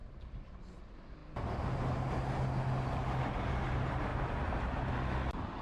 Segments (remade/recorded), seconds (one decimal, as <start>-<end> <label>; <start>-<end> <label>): 0.0-0.5 remade; 0.5-5.6 recorded